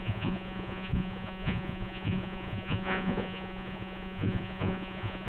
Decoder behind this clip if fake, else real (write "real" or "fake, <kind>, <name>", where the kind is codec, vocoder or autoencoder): fake, vocoder, Vocos